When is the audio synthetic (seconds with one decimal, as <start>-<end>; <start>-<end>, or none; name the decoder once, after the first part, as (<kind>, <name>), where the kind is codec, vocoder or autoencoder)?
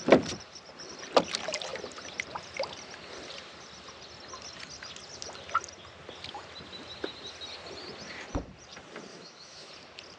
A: 9.1-9.7 (autoencoder, DAC-VAE)